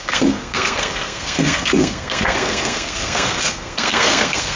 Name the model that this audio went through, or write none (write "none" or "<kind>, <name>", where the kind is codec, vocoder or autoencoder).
codec, SNAC